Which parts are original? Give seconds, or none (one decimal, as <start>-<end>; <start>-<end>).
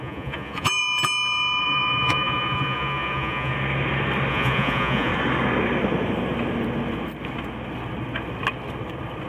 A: 0.8-1.6; 3.5-4.3; 5.1-9.3